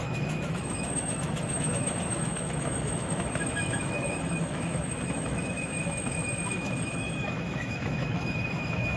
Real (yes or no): no